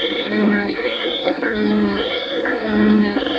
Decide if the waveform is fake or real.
fake